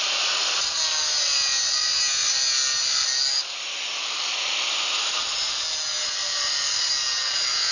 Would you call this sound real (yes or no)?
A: yes